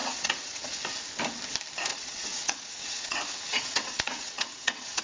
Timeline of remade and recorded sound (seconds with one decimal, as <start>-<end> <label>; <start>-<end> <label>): 0.0-0.8 remade; 0.8-1.9 recorded; 1.9-5.0 remade